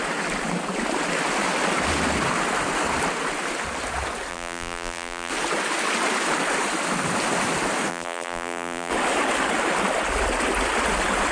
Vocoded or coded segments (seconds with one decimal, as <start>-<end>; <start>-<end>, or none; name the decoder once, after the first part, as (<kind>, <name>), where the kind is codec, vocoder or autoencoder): 4.3-5.3 (vocoder, BigVGAN v2); 7.9-8.9